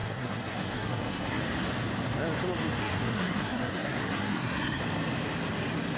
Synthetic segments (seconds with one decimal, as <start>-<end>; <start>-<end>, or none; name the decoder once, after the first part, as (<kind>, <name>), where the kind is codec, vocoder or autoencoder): 0.0-1.4 (codec, SNAC); 2.8-4.8